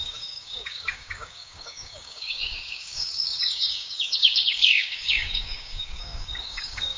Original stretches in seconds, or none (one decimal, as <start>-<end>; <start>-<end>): none